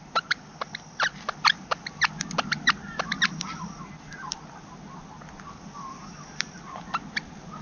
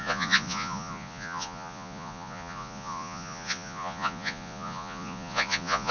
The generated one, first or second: second